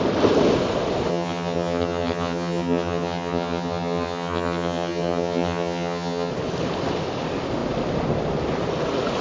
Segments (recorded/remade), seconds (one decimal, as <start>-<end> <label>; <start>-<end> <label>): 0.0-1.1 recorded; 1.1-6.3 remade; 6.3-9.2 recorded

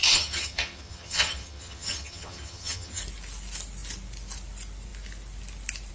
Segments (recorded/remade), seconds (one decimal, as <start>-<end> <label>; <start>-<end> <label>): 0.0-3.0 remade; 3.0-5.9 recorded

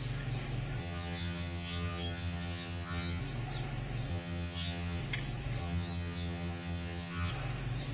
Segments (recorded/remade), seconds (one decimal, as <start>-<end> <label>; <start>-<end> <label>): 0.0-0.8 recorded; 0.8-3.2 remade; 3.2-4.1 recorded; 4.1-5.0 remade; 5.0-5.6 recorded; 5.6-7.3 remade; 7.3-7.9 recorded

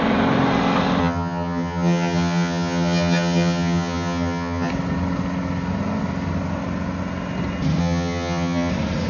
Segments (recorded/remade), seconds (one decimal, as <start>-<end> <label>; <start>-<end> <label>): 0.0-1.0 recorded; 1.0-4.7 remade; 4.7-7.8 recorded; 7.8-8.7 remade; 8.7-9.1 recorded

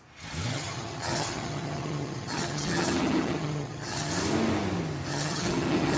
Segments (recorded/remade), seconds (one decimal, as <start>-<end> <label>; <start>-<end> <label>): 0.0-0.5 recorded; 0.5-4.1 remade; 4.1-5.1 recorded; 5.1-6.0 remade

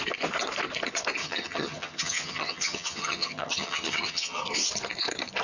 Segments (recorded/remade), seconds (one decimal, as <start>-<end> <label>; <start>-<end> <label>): 0.0-1.2 recorded; 1.2-4.4 remade; 4.4-5.4 recorded

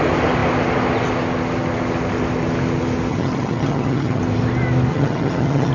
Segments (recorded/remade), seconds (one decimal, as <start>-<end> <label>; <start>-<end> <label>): 0.0-3.1 recorded; 3.1-4.2 remade; 4.2-4.9 recorded; 4.9-5.7 remade

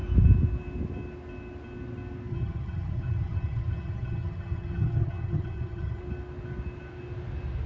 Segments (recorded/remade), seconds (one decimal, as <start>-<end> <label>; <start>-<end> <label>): 0.0-2.3 recorded; 2.3-6.0 remade; 6.0-7.7 recorded